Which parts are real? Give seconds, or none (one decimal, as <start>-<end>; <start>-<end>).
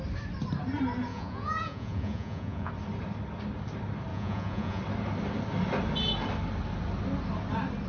0.0-1.1; 2.7-4.1; 4.8-7.9